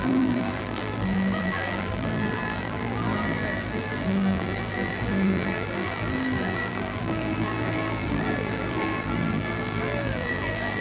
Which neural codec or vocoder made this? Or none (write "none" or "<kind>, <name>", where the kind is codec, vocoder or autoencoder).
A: vocoder, BigVGAN v2